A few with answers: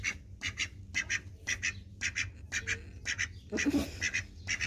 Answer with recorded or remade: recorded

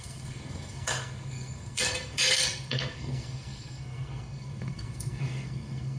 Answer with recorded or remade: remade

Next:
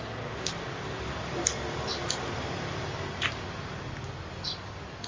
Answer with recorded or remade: recorded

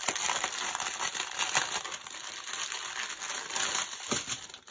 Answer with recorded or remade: recorded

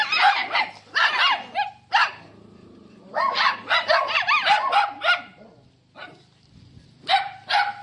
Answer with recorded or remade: recorded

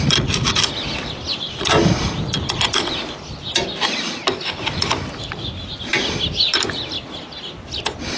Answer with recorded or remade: recorded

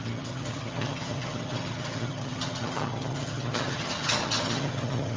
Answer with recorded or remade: remade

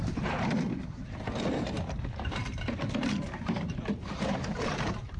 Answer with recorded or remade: remade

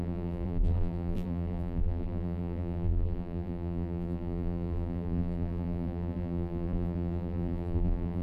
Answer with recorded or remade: remade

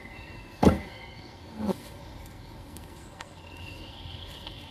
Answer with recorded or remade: remade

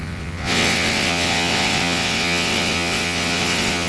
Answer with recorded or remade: remade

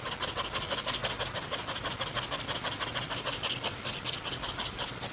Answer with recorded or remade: recorded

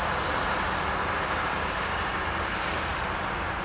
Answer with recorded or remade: recorded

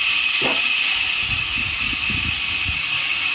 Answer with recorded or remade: recorded